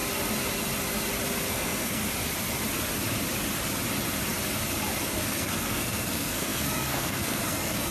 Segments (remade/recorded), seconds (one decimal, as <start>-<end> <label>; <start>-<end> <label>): 0.0-1.5 recorded; 1.5-2.0 remade; 2.0-5.0 recorded; 5.0-7.9 remade